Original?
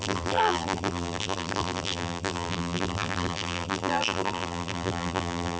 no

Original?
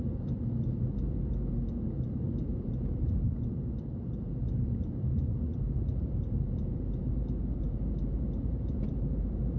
no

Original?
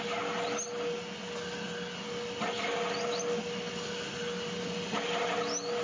yes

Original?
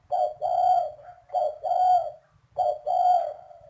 yes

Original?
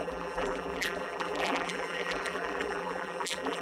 no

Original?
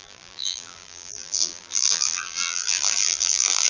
no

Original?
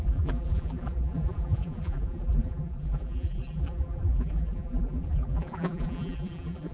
no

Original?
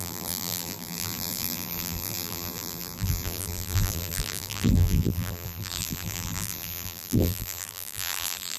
no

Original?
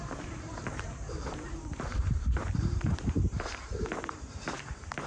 no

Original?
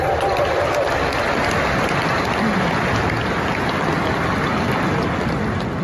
yes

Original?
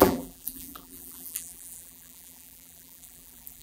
no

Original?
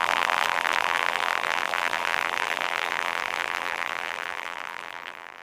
no